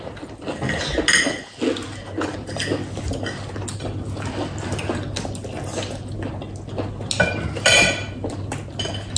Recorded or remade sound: recorded